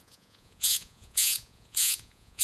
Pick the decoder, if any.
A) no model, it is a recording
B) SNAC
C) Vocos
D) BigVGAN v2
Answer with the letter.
C